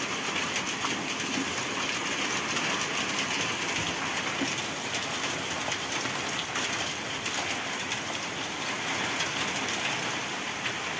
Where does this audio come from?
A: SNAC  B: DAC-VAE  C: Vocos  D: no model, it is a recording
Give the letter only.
D